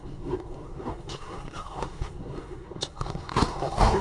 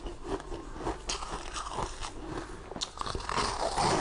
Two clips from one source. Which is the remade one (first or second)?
first